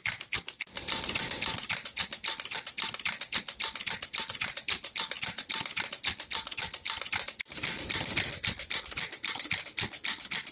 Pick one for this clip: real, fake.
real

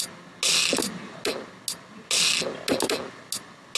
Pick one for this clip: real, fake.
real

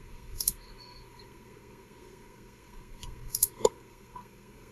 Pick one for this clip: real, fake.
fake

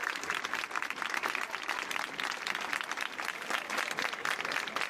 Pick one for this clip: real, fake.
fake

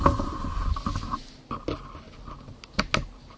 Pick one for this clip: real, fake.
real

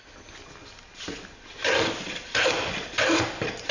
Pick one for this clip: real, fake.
real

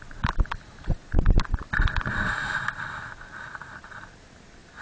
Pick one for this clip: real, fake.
real